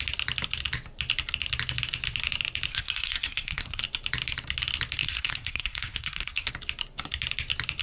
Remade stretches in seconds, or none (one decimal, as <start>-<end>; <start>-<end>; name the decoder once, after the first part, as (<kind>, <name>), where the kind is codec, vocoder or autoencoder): 2.7-3.8 (codec, SNAC); 5.0-6.5